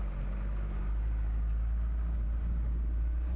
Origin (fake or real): real